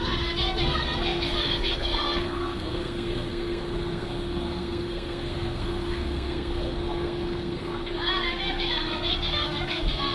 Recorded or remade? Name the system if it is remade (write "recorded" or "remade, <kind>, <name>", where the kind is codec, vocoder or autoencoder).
remade, codec, SNAC